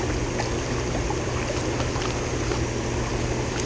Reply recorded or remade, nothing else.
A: recorded